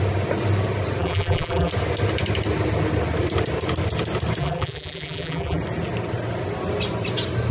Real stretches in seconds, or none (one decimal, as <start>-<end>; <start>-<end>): 0.0-1.0; 1.7-4.4; 5.6-7.5